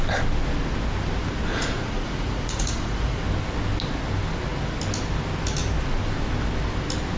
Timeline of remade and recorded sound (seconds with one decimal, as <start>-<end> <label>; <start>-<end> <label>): 0.0-1.5 recorded; 1.5-3.2 remade; 3.2-7.2 recorded